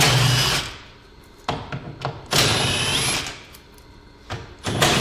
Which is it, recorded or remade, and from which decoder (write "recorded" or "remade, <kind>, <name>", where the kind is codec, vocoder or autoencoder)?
recorded